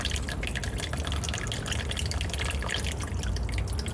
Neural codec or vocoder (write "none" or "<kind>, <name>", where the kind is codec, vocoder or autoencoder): none